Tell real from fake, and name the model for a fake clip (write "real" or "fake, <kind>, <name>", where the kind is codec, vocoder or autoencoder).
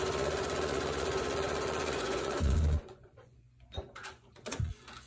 fake, vocoder, Vocos